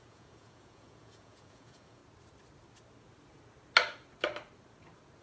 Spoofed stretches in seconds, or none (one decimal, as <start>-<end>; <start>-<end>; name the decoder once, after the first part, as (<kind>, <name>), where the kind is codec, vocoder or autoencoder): 0.0-2.0 (vocoder, Vocos)